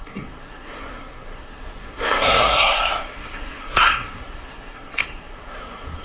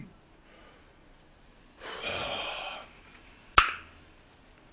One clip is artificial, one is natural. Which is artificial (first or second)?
first